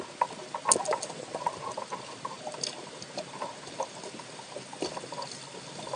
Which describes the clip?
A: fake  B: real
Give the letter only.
B